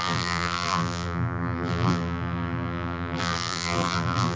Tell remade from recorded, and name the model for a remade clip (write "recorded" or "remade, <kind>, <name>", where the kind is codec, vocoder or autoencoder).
remade, vocoder, BigVGAN v2